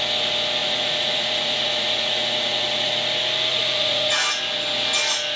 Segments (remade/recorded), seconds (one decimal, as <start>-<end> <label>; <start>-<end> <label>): 0.0-0.6 recorded; 0.6-2.9 remade; 2.9-3.5 recorded; 3.5-4.2 remade; 4.2-5.4 recorded